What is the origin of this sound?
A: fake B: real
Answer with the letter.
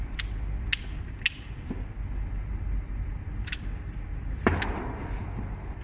B